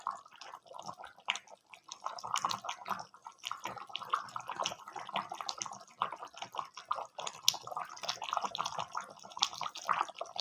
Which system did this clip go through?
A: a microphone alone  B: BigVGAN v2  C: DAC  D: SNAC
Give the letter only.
A